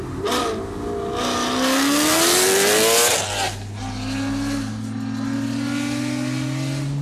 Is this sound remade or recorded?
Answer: recorded